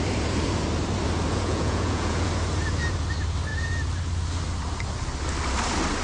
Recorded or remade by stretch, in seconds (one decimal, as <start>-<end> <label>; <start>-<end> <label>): 0.0-1.3 recorded; 1.3-2.3 remade; 2.3-6.0 recorded